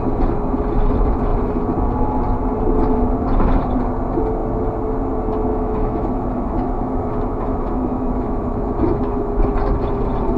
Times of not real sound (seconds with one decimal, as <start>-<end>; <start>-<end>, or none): 5.5-9.4